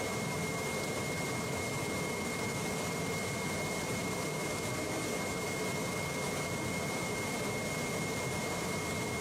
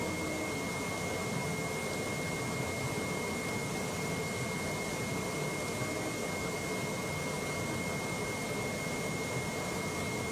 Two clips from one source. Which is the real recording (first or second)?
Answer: second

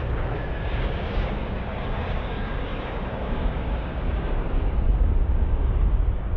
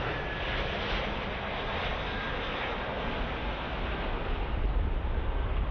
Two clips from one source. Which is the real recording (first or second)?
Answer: second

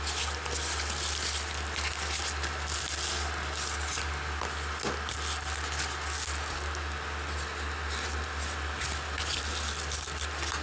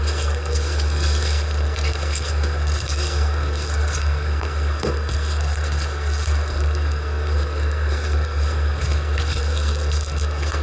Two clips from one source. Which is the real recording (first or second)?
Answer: first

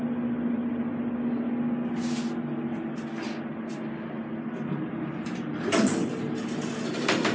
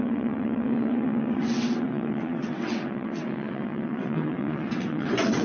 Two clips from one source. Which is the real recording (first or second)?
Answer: first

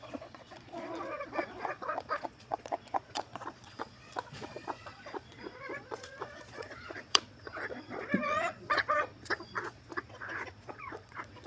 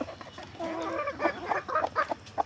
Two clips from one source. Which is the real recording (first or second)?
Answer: second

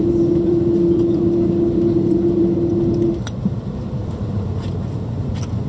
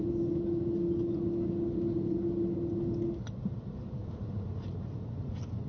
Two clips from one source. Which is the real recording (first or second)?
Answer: second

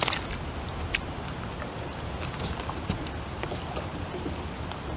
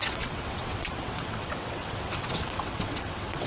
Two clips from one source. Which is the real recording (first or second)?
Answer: first